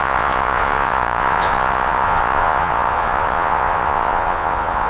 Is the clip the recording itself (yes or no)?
no